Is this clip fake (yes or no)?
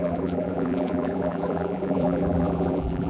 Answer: yes